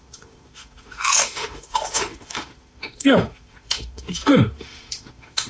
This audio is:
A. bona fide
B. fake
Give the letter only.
B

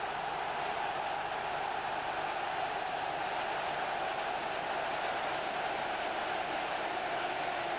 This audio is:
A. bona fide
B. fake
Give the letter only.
A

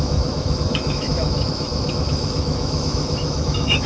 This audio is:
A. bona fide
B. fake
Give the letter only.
B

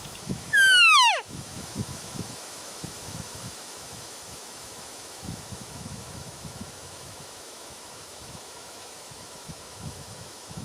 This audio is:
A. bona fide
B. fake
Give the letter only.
B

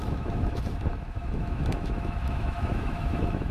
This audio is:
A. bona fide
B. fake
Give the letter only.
B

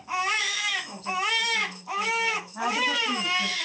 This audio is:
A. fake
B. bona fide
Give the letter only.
A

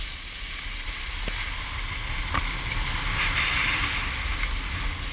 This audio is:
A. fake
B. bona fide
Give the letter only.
B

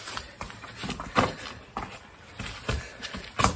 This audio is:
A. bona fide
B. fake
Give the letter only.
A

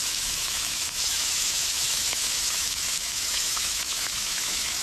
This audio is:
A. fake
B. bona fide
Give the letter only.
A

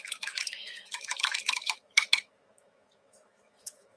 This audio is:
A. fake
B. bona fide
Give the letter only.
A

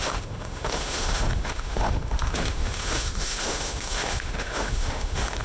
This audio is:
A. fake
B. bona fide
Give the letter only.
A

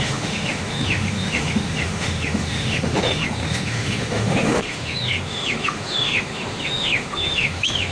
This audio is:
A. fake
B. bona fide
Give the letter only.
A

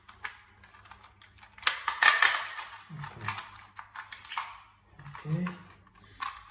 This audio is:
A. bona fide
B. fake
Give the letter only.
A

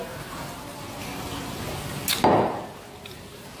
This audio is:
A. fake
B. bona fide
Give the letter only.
B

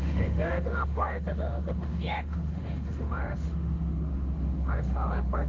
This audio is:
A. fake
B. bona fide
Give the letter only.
A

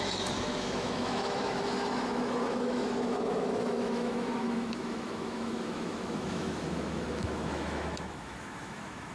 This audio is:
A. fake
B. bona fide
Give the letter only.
A